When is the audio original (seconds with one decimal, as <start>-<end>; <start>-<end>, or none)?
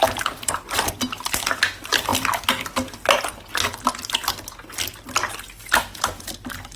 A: 0.0-6.8